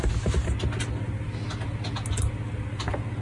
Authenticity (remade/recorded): recorded